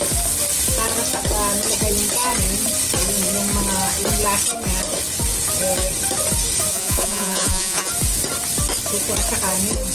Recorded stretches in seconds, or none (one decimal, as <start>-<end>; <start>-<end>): 0.0-6.7; 7.9-9.9